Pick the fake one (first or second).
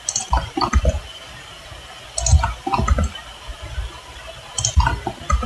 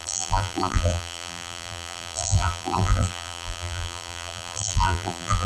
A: second